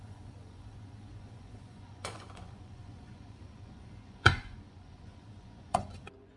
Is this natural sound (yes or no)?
no